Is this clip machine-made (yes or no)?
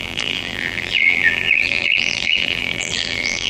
yes